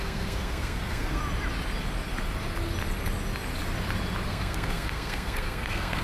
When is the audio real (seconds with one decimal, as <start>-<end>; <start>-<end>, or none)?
1.2-4.3